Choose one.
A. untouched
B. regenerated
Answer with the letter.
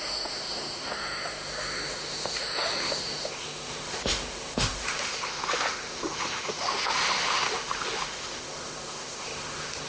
B